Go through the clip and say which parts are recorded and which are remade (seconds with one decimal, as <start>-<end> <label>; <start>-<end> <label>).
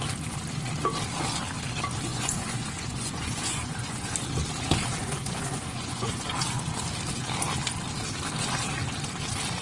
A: 0.0-2.1 recorded; 2.1-4.1 remade; 4.1-5.0 recorded; 5.0-6.3 remade; 6.3-9.6 recorded